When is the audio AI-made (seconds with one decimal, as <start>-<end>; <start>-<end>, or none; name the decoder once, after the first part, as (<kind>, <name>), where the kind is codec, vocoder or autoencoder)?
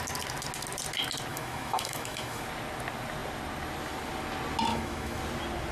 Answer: 1.3-2.4 (autoencoder, DAC-VAE); 4.7-5.2